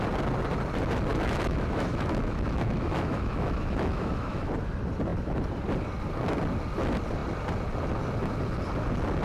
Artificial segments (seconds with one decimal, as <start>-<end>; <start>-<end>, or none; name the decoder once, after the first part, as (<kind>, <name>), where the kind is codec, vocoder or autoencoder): 1.1-4.5 (autoencoder, DAC-VAE)